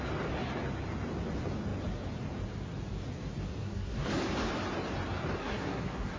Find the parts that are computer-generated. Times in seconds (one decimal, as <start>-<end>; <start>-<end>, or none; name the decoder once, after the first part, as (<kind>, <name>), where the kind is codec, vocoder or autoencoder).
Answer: 3.6-4.1 (codec, SNAC); 5.4-6.2

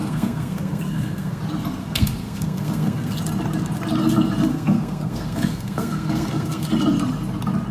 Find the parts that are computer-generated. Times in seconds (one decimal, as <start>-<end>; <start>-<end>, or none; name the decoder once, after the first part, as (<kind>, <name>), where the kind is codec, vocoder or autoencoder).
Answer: 0.0-1.4 (codec, SNAC); 1.8-3.1; 4.5-6.7

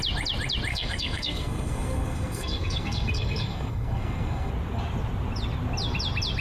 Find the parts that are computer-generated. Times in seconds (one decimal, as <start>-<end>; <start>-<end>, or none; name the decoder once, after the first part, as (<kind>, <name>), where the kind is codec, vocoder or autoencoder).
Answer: 0.7-4.5 (codec, SNAC)

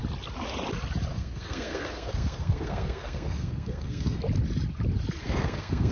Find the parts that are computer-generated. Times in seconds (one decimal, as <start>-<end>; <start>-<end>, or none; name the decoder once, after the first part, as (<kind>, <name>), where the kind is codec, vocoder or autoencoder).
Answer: 1.1-4.2 (codec, SNAC); 5.2-5.9

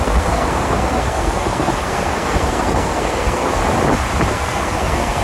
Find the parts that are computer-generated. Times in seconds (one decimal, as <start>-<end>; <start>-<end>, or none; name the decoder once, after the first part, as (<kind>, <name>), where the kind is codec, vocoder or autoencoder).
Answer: 0.0-3.6 (codec, SNAC); 4.3-5.2

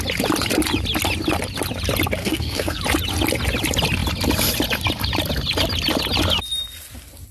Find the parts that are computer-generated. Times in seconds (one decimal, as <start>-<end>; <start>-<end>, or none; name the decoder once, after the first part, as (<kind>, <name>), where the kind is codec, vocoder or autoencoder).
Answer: 2.2-2.8 (codec, SNAC)